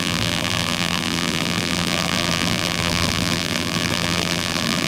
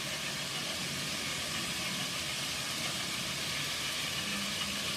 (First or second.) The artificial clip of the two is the first